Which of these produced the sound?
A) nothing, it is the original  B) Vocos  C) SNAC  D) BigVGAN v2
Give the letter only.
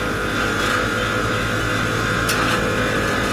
A